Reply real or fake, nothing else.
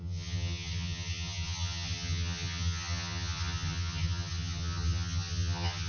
fake